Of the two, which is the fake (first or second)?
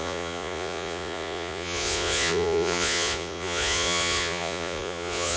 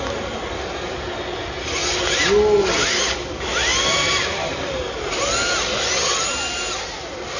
first